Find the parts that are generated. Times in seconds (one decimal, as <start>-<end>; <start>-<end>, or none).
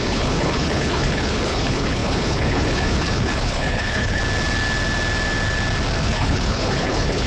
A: 0.0-4.2; 6.0-7.3